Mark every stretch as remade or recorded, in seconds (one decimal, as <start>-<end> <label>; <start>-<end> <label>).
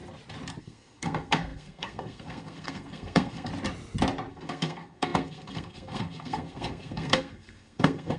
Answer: 0.0-0.6 recorded; 0.6-3.5 remade; 3.5-4.3 recorded; 4.3-8.2 remade